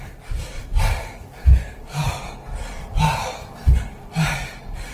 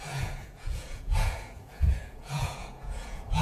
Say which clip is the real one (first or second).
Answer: first